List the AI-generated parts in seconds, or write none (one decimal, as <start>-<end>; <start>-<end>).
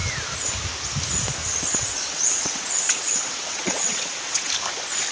1.4-4.5